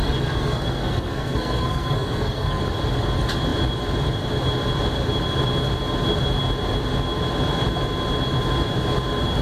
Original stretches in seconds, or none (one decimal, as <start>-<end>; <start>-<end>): 2.6-9.4